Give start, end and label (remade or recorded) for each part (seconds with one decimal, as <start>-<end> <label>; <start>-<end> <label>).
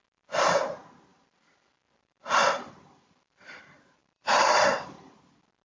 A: 0.0-1.1 recorded; 1.1-3.6 remade; 3.6-4.0 recorded; 4.0-5.2 remade; 5.2-5.7 recorded